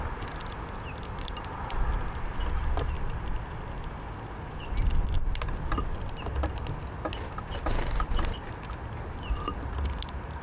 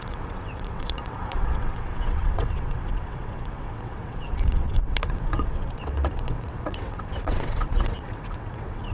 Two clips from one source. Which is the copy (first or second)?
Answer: second